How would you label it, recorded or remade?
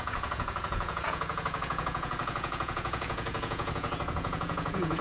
remade